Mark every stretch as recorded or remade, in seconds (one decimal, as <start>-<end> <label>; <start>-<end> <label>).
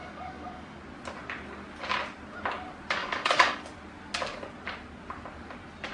0.0-0.8 remade; 0.8-3.0 recorded; 3.0-3.7 remade; 3.7-5.9 recorded